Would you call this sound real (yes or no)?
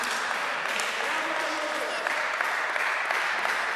yes